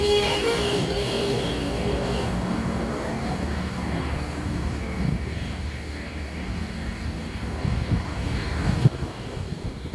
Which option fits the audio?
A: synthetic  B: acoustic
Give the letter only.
A